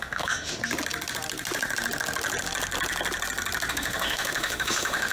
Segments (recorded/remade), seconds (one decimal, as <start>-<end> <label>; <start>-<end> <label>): 0.0-0.6 remade; 0.6-3.7 recorded; 3.7-5.1 remade